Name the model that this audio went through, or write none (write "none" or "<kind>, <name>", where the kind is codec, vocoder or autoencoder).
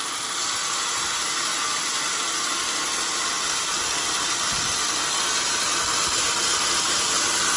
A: none